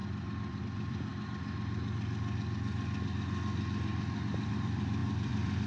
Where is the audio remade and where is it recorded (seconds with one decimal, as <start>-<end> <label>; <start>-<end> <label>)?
0.0-1.1 remade; 1.1-4.5 recorded; 4.5-5.7 remade